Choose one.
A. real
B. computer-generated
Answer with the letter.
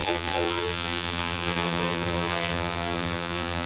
B